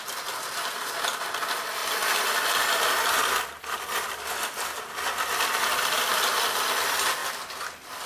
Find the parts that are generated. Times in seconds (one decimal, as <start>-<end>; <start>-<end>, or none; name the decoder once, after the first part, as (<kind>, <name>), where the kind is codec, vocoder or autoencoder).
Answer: none